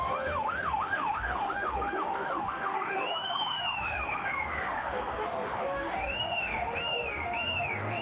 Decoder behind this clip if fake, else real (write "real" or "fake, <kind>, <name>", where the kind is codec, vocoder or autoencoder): fake, autoencoder, DAC-VAE